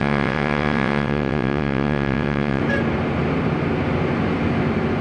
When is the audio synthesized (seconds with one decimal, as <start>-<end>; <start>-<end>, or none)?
0.0-2.6